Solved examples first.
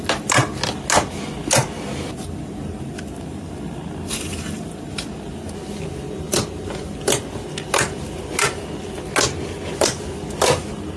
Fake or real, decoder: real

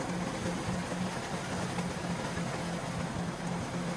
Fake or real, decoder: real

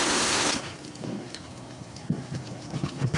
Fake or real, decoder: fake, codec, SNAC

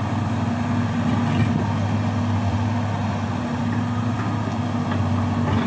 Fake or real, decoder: real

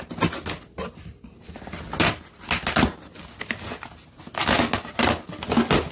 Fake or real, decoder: real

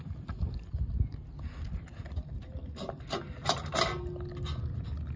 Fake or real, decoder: real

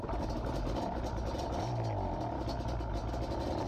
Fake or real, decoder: real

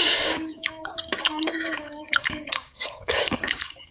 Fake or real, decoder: fake, codec, DAC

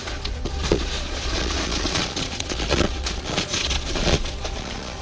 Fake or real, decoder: fake, vocoder, Vocos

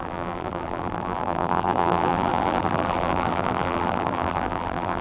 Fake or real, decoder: fake, vocoder, BigVGAN v2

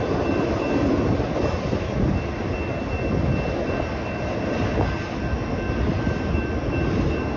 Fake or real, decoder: real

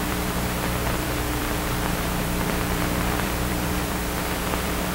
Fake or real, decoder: fake, vocoder, BigVGAN v2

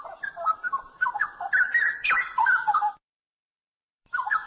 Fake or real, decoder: fake, vocoder, BigVGAN v2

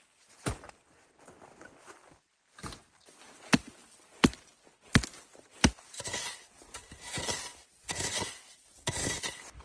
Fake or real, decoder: real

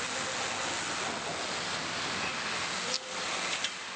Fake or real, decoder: real